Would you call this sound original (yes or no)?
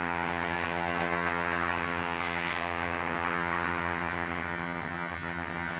no